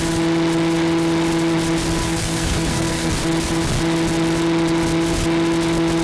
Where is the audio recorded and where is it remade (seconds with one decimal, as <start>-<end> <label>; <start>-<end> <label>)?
0.0-2.0 recorded; 2.0-3.1 remade; 3.1-6.0 recorded